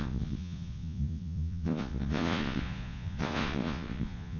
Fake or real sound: fake